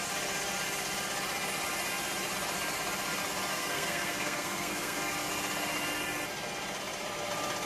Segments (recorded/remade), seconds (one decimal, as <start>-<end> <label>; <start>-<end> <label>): 0.0-3.5 recorded; 3.5-5.1 remade; 5.1-7.7 recorded